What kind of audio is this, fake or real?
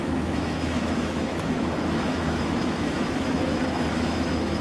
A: fake